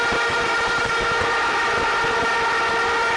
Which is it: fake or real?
real